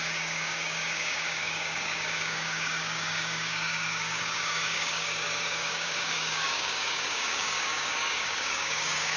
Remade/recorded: remade